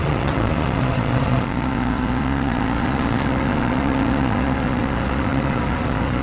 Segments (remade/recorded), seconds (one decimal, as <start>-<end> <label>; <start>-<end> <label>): 0.0-6.2 remade